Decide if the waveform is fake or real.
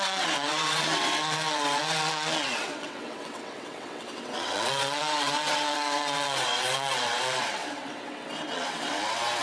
fake